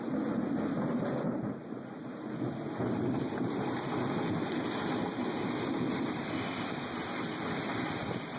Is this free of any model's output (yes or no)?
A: yes